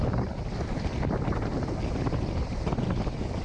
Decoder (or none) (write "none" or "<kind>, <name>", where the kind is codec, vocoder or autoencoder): none